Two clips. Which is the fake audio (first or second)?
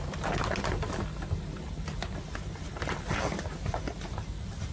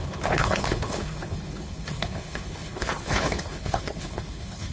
second